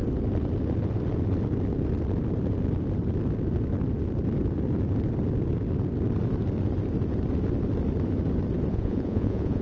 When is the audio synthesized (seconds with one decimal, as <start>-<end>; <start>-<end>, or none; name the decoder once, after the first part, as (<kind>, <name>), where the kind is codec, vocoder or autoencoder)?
8.7-9.6 (vocoder, Vocos)